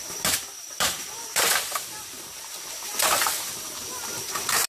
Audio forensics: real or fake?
fake